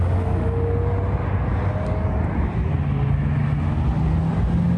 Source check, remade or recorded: recorded